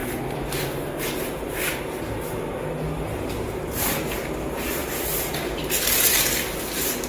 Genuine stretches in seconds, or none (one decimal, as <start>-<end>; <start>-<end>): 0.0-7.1